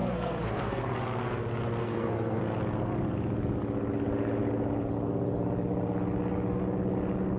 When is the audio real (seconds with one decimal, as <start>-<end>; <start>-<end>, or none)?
0.8-1.8; 2.4-7.4